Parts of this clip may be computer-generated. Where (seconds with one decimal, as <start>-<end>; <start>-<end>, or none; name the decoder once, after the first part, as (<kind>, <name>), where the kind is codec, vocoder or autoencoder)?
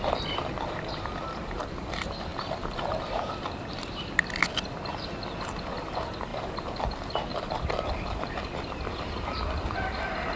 0.0-6.3 (vocoder, BigVGAN v2); 6.8-10.4